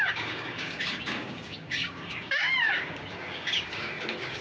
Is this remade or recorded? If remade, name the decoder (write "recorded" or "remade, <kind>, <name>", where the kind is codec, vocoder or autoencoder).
remade, codec, DAC